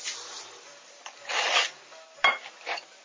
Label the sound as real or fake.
real